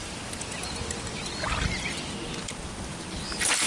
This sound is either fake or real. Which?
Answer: real